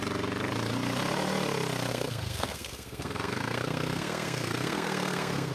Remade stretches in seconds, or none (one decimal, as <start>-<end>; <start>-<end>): 1.9-5.5